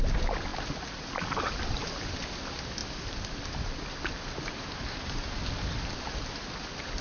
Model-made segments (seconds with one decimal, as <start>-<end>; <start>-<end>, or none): none